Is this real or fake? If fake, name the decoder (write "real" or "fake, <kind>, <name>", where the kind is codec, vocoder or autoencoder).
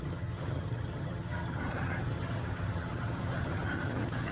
fake, vocoder, HiFi-GAN